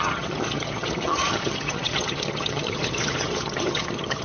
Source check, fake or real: fake